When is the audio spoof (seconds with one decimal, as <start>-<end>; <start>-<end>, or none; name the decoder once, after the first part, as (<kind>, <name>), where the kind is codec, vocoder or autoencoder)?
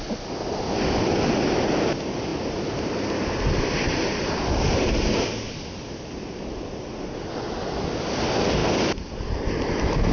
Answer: none